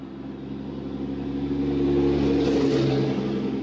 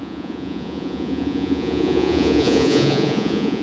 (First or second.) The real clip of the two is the first